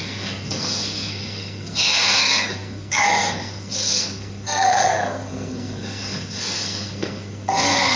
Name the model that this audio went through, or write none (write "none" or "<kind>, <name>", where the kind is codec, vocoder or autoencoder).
codec, SNAC